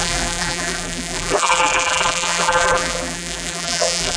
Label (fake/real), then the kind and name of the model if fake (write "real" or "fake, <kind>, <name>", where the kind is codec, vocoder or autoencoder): fake, vocoder, BigVGAN v2